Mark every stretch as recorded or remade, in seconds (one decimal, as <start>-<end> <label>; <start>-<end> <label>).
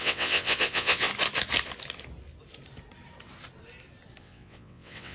0.0-1.1 remade; 1.1-4.2 recorded; 4.2-5.1 remade